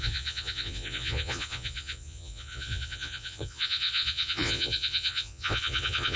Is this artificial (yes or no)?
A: yes